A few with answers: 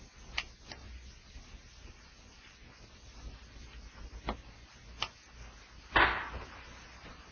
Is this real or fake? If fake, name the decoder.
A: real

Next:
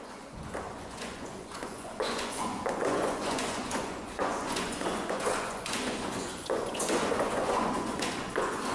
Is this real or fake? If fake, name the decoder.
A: fake, vocoder, Vocos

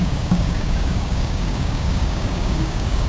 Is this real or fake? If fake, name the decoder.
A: fake, codec, DAC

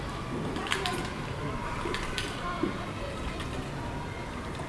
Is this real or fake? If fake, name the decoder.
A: real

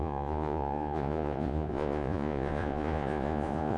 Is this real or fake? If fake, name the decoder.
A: fake, vocoder, Vocos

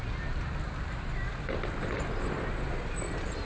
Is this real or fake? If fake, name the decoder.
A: real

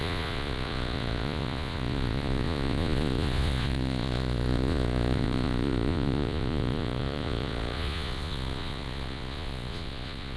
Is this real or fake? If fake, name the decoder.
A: fake, vocoder, Vocos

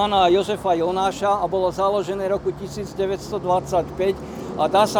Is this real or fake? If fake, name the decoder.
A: real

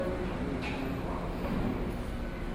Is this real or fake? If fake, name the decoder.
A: real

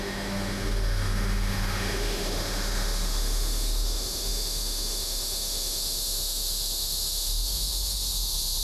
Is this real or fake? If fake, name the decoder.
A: fake, autoencoder, DAC-VAE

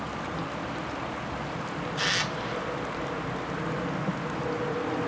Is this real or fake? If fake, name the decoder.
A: real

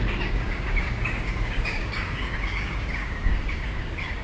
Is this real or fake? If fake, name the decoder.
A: fake, codec, DAC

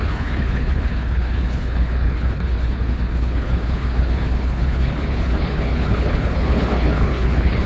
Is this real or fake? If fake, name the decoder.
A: fake, codec, HILCodec